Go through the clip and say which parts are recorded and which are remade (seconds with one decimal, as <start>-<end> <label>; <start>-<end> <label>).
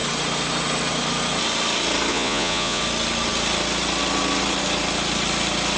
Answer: 0.0-2.1 recorded; 2.1-2.8 remade; 2.8-5.8 recorded